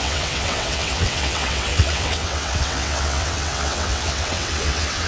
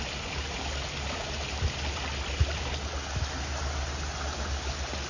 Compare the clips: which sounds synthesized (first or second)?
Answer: first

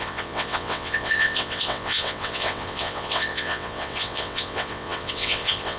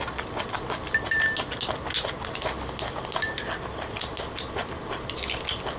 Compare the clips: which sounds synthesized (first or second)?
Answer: first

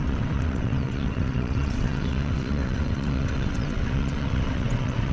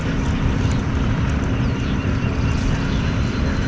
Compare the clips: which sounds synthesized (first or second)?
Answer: first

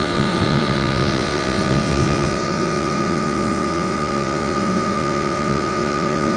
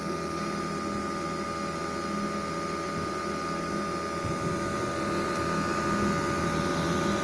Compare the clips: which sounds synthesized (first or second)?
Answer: first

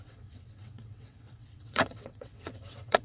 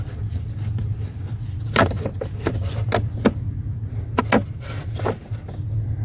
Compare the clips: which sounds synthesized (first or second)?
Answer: first